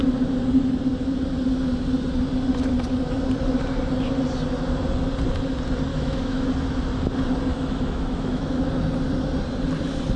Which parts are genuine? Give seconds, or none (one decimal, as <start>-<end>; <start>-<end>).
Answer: 0.0-5.9; 6.5-7.5; 8.7-10.2